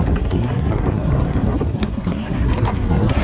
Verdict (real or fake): fake